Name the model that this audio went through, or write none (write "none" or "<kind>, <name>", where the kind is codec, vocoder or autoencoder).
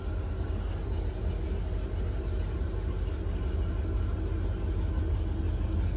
none